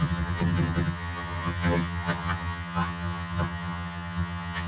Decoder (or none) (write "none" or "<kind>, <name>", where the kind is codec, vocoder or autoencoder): vocoder, HiFi-GAN